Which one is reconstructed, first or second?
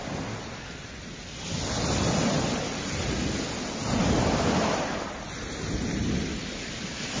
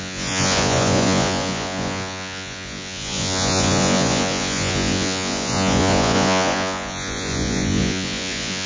second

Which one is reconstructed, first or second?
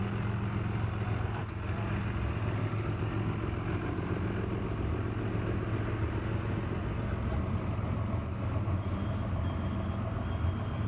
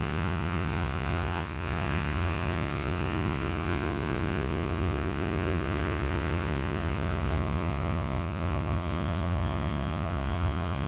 second